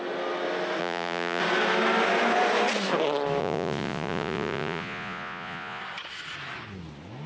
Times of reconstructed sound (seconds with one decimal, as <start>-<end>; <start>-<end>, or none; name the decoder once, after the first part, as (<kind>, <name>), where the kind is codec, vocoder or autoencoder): 0.8-1.4 (vocoder, Vocos); 3.4-5.8